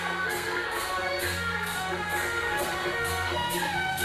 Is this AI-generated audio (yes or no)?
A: yes